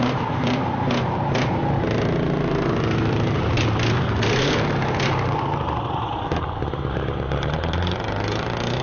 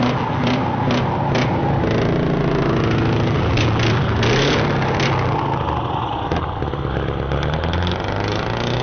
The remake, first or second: first